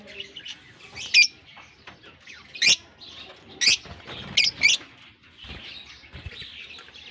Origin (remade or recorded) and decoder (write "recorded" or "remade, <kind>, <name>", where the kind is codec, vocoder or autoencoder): recorded